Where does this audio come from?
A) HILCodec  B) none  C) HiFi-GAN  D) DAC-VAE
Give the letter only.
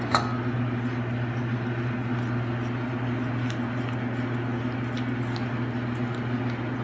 B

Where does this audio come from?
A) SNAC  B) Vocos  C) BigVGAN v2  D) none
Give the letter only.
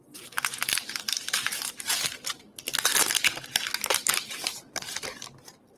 C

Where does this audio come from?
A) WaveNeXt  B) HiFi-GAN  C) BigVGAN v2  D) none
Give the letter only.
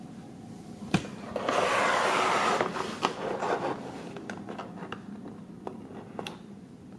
D